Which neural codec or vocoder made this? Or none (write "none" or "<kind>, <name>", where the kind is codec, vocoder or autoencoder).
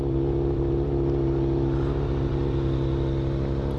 none